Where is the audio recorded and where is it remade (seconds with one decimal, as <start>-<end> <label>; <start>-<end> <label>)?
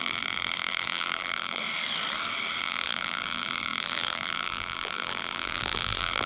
0.0-1.6 remade; 1.6-2.6 recorded; 2.6-6.3 remade